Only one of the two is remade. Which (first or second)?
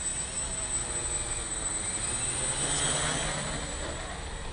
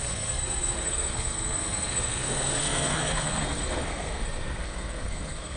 second